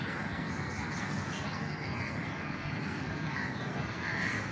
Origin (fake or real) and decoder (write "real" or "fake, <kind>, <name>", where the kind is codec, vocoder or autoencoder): fake, codec, SNAC